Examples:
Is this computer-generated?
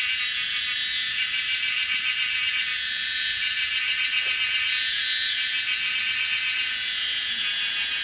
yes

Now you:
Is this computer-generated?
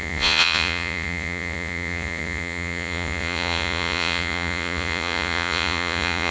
yes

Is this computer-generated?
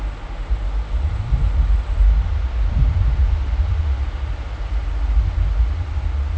no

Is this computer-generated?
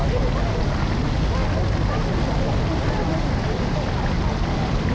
no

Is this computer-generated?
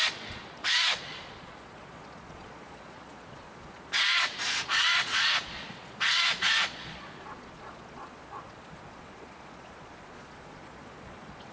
yes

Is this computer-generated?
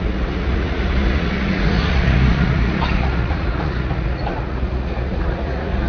yes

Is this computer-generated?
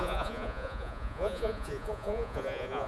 yes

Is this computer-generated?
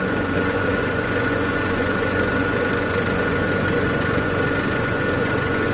yes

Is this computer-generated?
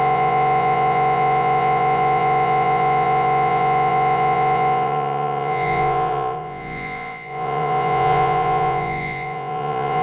yes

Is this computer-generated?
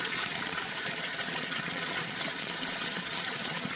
yes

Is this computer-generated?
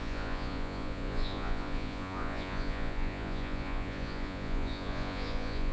yes